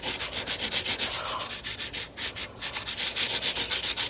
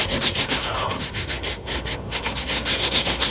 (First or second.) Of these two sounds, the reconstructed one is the second